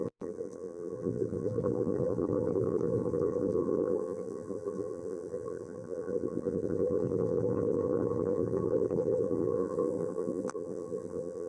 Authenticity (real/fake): fake